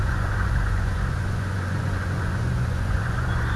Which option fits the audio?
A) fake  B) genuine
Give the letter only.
A